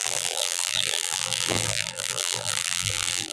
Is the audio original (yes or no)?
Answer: no